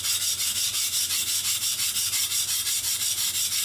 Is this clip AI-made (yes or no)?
no